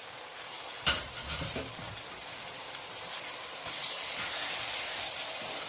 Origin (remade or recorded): recorded